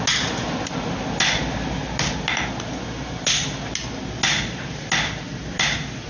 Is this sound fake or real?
real